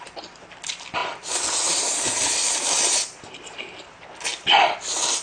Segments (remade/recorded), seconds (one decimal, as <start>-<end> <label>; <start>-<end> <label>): 0.0-5.2 recorded